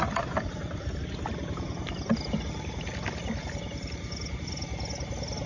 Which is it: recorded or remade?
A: recorded